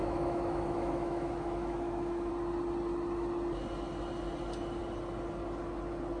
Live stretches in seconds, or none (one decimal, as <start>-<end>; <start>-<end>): 2.3-6.2